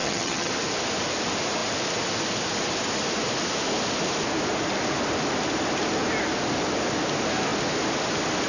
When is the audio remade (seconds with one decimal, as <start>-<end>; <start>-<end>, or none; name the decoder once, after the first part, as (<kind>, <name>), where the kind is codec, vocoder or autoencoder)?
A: 0.0-0.5 (vocoder, HiFi-GAN)